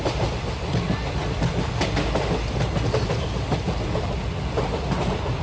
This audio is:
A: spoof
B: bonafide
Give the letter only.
B